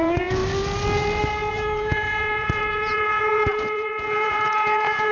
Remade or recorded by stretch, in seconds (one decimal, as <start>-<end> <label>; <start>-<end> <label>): 0.0-0.4 remade; 0.4-1.5 recorded; 1.5-5.1 remade